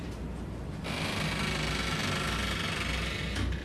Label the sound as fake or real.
real